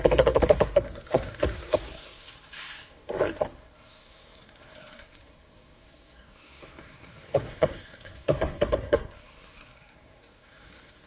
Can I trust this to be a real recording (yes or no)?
no